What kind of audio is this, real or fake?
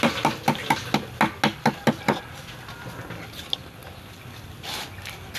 real